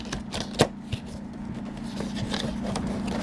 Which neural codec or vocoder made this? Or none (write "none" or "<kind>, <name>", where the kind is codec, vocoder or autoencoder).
none